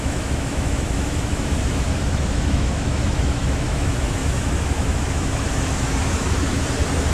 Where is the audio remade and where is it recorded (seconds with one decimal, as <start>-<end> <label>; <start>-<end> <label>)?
0.0-6.5 remade; 6.5-7.1 recorded